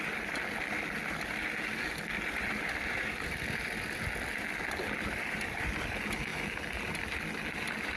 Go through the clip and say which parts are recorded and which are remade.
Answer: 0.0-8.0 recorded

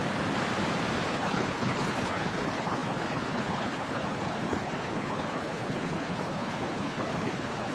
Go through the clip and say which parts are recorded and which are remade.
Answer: 0.0-1.1 recorded; 1.1-7.7 remade

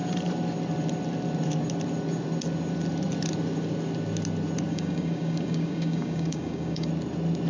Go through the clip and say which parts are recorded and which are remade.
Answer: 0.0-4.7 recorded; 4.7-6.9 remade; 6.9-7.5 recorded